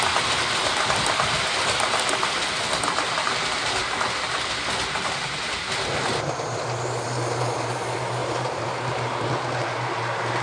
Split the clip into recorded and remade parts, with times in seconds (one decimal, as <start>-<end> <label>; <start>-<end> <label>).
0.0-8.2 recorded; 8.2-9.3 remade; 9.3-10.4 recorded